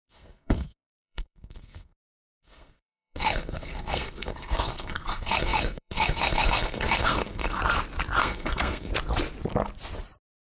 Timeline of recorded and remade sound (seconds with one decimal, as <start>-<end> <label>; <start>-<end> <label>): 0.0-7.6 remade; 7.6-8.2 recorded; 8.2-8.9 remade; 8.9-10.5 recorded